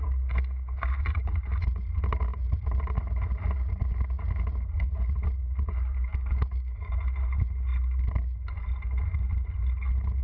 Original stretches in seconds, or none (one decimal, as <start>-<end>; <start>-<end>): 0.0-6.1; 6.9-10.2

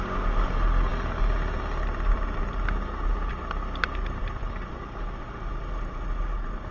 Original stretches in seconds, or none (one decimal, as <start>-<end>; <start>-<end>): 0.0-6.7

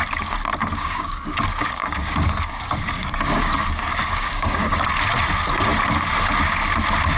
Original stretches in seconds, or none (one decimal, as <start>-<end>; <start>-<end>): 0.0-0.6; 4.9-7.2

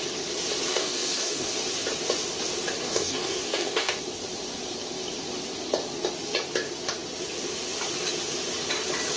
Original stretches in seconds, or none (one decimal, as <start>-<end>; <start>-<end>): 0.0-0.7; 1.5-2.8; 4.0-9.2

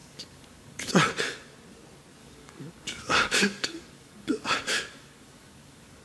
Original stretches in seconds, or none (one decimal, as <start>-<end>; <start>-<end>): 0.9-2.2